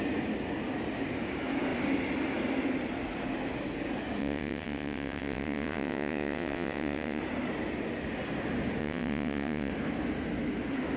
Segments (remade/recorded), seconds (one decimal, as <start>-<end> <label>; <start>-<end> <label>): 0.0-4.2 recorded; 4.2-7.2 remade; 7.2-8.8 recorded; 8.8-9.7 remade; 9.7-11.0 recorded